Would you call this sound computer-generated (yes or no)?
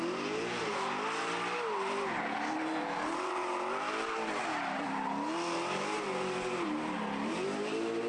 no